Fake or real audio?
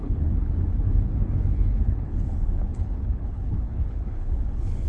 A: fake